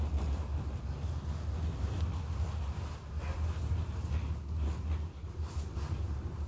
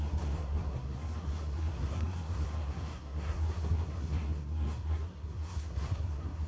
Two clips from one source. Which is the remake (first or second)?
second